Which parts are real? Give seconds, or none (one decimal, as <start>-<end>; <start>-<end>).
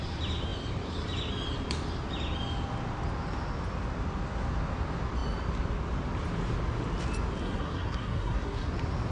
0.0-7.4; 8.7-9.1